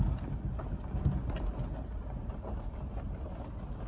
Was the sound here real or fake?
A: real